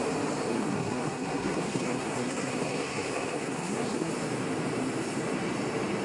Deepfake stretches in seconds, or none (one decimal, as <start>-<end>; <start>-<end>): 0.5-4.1